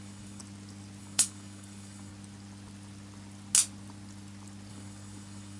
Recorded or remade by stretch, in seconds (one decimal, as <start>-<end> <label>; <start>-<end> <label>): 0.0-0.4 remade; 0.4-1.0 recorded; 1.0-2.1 remade; 2.1-4.7 recorded; 4.7-5.6 remade